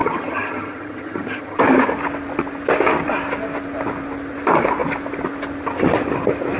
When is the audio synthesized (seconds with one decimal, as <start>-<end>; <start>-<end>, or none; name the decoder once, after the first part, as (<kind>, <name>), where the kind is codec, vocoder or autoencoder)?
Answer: 0.0-1.6 (vocoder, HiFi-GAN)